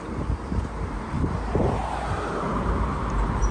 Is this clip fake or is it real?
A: fake